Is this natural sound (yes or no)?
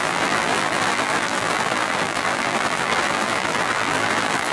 no